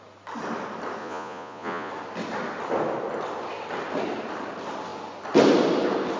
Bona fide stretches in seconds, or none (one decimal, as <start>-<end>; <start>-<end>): 0.0-1.0; 1.9-6.2